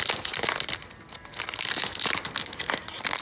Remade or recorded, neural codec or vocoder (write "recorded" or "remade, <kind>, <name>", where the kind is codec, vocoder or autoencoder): recorded